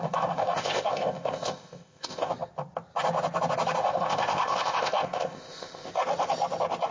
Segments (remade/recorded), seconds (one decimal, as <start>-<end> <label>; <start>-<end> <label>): 0.0-2.3 remade; 2.3-3.8 recorded; 3.8-5.9 remade; 5.9-6.9 recorded